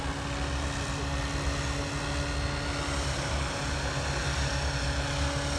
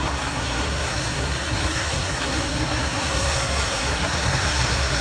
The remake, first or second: second